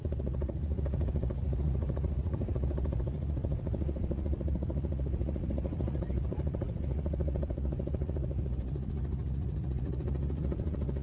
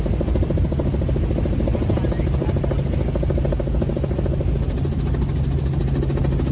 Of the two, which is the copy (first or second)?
first